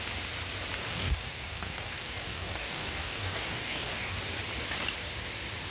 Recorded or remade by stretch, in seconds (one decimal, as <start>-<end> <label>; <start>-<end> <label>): 0.0-0.8 recorded; 0.8-4.2 remade; 4.2-5.7 recorded